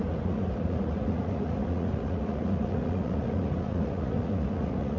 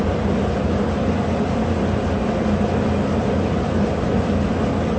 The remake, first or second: first